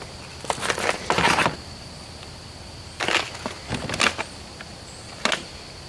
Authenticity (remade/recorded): recorded